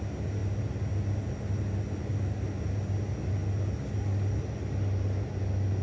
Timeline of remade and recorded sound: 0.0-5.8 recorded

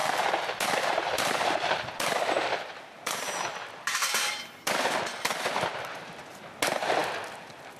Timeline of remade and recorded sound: 0.0-4.7 remade; 4.7-7.8 recorded